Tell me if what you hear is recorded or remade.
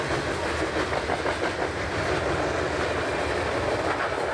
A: recorded